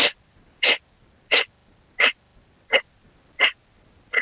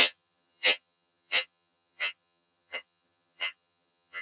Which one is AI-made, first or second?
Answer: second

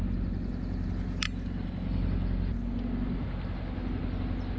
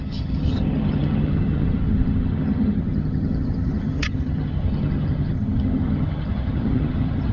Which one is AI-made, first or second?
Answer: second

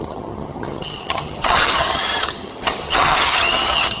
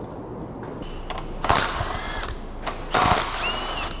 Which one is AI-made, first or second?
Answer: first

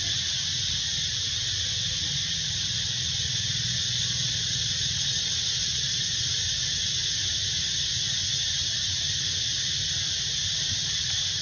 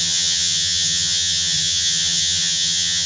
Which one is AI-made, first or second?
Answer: second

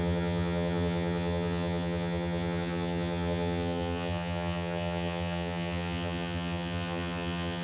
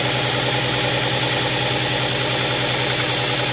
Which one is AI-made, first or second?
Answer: first